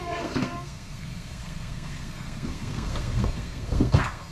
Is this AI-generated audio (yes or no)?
yes